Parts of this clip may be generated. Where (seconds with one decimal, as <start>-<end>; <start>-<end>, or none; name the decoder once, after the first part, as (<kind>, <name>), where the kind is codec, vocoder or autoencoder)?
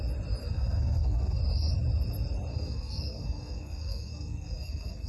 0.4-1.4 (codec, SNAC); 2.5-5.1